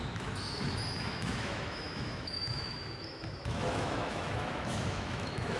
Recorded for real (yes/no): no